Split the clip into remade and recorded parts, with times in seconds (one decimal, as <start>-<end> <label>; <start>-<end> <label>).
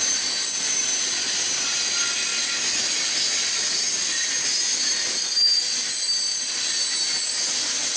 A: 0.0-8.0 recorded